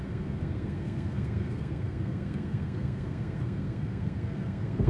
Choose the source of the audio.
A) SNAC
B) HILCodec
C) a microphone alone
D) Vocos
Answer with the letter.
A